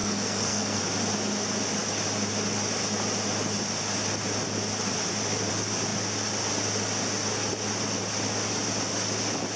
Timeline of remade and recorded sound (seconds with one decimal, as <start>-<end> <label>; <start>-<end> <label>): 0.0-0.8 remade; 0.8-9.6 recorded